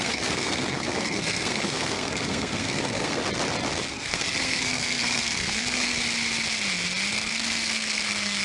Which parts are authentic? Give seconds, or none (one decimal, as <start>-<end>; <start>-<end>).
3.2-3.9; 6.0-7.1